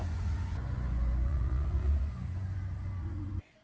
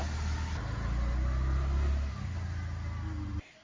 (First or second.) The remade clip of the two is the first